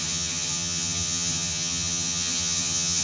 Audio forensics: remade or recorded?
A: remade